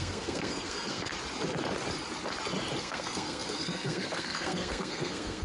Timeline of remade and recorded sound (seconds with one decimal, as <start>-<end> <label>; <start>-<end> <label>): 0.0-1.1 remade; 1.1-2.8 recorded; 2.8-5.4 remade